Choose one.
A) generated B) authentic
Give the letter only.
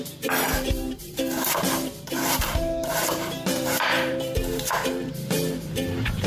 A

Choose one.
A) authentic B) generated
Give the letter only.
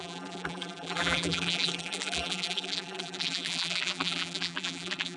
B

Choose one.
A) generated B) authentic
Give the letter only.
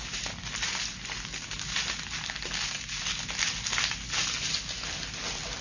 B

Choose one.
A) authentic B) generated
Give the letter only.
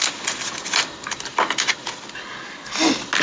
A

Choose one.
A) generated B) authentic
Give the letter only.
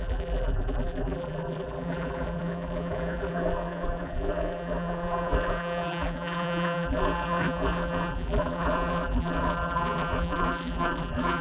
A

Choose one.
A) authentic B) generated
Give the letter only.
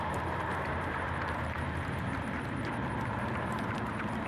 B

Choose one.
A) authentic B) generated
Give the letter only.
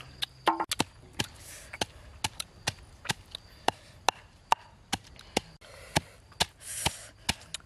A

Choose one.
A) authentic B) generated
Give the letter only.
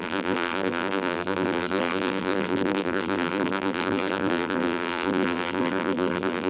B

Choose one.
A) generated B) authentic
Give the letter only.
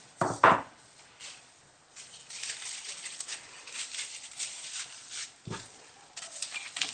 B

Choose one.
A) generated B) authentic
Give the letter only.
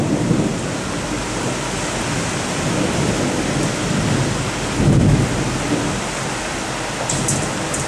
B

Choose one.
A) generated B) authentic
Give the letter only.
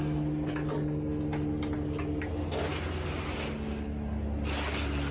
B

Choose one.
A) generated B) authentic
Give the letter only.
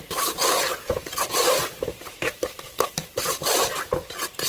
A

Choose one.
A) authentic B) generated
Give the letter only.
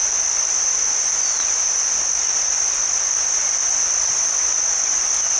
A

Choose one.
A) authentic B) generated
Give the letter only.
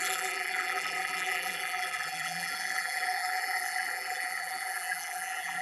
B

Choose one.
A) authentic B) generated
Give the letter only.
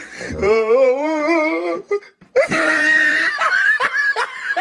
B